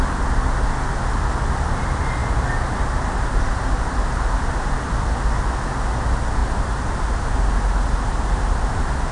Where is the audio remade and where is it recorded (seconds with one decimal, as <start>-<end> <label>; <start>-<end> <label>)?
0.0-9.1 recorded